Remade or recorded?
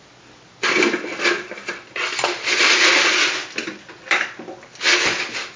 recorded